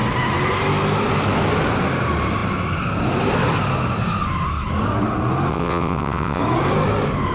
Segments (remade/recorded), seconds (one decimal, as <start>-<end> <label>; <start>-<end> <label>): 0.0-5.5 recorded; 5.5-6.4 remade; 6.4-7.3 recorded